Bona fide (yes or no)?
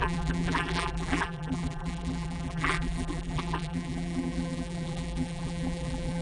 no